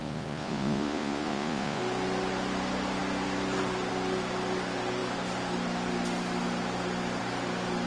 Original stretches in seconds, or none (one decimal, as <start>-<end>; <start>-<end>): 1.8-7.9